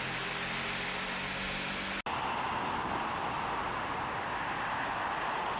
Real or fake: real